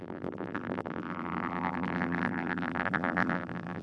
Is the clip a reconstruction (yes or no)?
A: yes